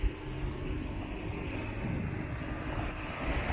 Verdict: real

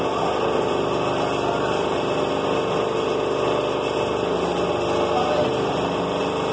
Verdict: real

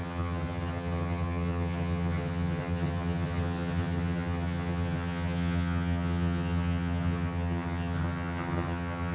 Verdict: fake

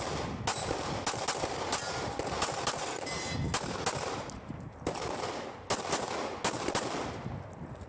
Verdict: real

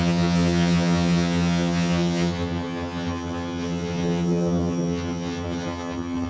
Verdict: fake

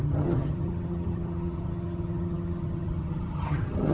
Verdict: fake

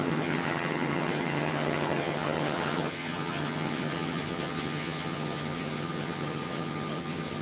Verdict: fake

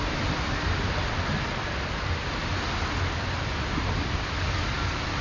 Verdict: real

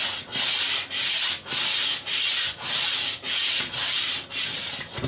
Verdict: real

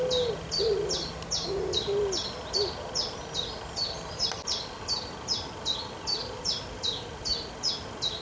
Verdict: real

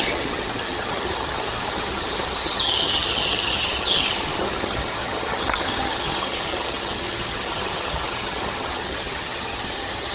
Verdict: fake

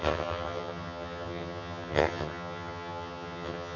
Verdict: fake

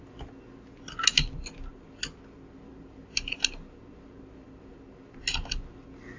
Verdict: real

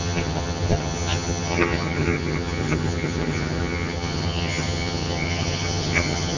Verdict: fake